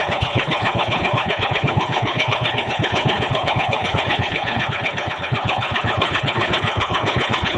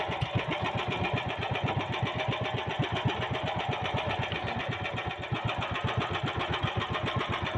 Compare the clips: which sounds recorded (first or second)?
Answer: second